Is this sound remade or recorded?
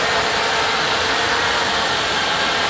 recorded